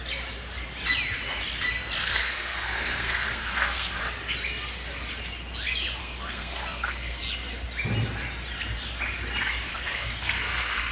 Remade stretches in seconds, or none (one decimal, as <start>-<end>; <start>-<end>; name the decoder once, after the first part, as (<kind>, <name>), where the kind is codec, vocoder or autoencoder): 2.0-4.0 (codec, SNAC); 6.0-7.2; 9.7-10.9

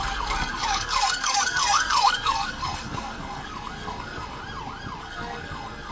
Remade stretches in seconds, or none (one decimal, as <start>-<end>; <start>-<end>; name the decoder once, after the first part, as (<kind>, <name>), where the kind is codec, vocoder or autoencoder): 0.0-4.4 (codec, SNAC); 5.0-5.9

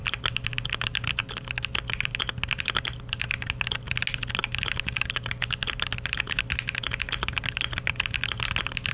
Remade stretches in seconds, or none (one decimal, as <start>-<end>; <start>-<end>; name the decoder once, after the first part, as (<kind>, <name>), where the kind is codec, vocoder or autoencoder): none

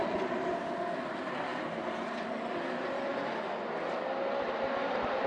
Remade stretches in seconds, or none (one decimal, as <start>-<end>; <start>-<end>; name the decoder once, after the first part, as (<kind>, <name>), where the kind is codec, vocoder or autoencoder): none

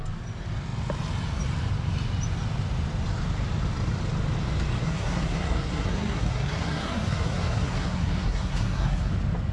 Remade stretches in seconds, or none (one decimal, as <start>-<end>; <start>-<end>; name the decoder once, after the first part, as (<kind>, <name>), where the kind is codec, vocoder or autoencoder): 4.8-9.1 (codec, SNAC)

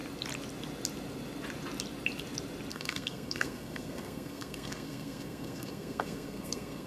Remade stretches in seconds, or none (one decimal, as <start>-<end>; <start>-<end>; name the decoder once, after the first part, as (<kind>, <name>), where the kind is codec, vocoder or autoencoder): 2.7-6.9 (codec, SNAC)

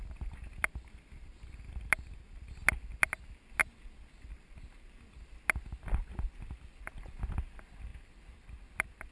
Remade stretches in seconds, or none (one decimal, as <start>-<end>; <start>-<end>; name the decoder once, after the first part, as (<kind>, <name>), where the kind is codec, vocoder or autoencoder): none

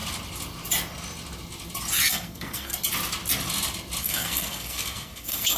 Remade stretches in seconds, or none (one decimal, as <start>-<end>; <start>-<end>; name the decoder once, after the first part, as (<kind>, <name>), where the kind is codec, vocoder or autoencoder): 2.1-2.7 (codec, SNAC); 4.0-5.6